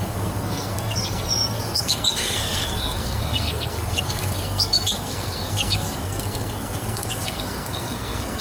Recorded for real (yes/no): no